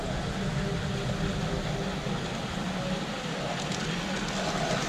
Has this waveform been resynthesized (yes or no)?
no